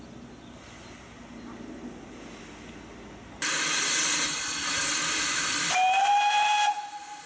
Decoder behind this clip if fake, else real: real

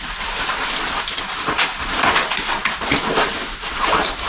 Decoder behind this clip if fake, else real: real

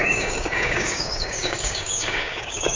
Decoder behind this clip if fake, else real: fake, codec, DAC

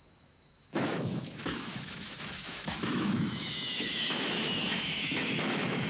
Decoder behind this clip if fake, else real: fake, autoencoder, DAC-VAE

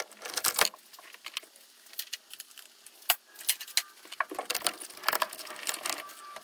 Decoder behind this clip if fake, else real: real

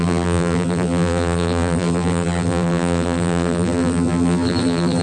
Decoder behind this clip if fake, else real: fake, vocoder, BigVGAN v2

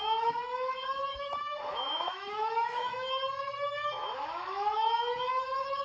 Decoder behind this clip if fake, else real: fake, autoencoder, DAC-VAE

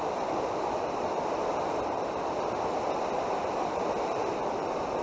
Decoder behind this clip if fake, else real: fake, vocoder, BigVGAN v2